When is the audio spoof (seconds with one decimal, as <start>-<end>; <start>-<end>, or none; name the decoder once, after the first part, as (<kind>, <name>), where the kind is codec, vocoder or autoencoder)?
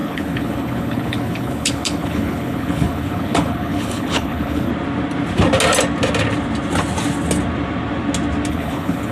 0.0-4.7 (codec, HILCodec); 8.5-9.1